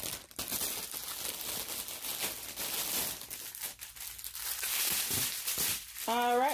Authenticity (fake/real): real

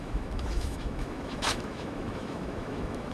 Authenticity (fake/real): fake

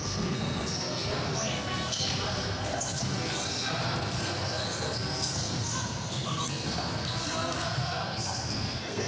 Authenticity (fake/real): fake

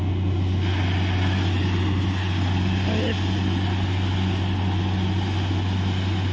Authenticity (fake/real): real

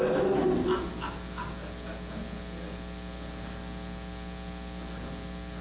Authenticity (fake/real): real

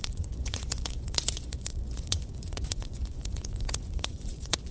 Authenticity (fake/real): fake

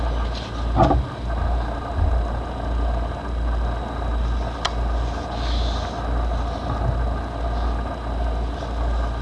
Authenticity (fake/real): real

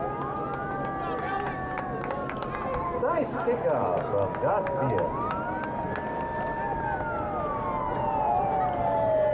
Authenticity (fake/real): real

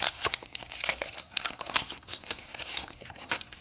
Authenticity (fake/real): fake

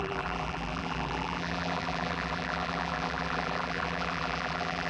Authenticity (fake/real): fake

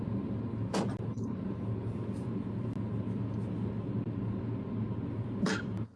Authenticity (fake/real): real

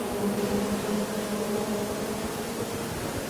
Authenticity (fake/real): fake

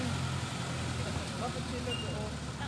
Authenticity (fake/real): real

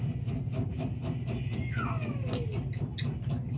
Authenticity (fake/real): real